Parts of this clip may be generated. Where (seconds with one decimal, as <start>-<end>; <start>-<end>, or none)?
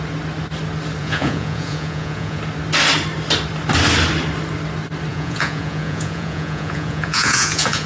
1.0-2.4; 5.1-7.9